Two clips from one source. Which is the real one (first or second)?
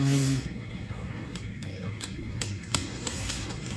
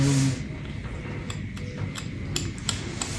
second